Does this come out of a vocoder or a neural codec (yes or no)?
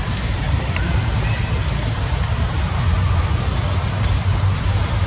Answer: yes